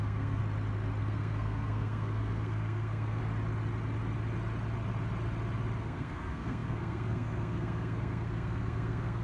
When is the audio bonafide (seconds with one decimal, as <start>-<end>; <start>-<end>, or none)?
0.4-1.0; 3.2-5.8